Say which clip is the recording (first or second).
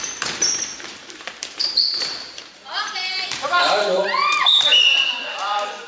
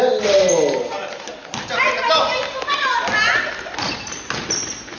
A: second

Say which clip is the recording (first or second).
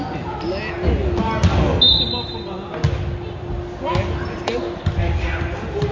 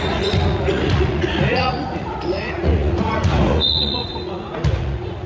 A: first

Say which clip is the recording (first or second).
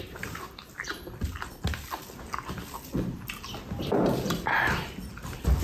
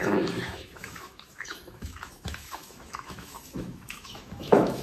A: first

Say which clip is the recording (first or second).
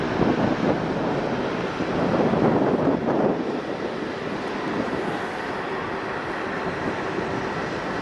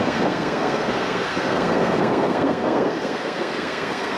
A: first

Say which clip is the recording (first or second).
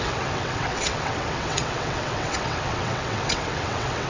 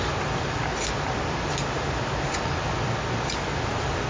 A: second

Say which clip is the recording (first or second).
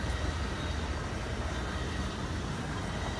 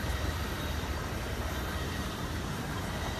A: first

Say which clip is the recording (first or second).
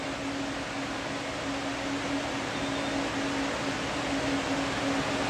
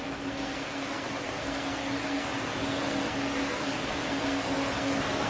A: first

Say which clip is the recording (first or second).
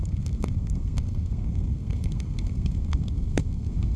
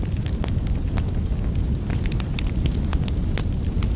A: second